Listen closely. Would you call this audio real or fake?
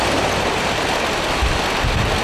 real